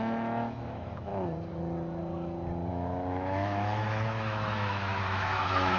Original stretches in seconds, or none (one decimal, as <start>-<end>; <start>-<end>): 1.1-2.7